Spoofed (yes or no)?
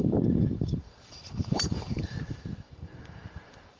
yes